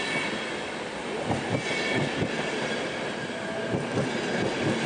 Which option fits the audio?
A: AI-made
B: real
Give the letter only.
B